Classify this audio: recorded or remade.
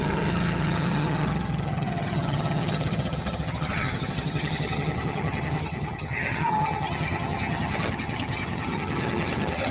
remade